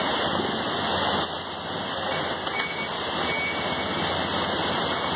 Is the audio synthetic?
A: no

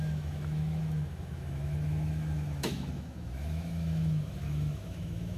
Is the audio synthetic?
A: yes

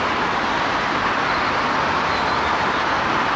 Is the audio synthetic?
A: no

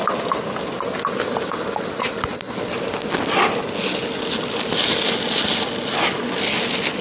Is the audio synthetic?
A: no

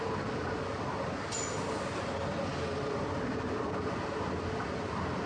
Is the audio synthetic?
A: no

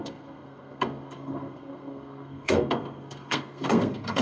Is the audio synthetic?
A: yes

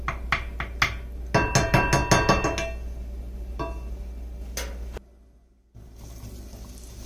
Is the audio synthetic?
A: no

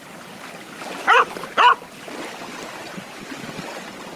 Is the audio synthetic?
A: yes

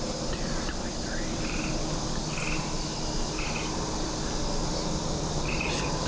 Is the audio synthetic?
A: no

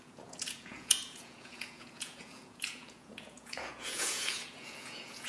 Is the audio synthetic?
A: yes